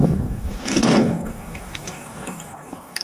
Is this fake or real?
fake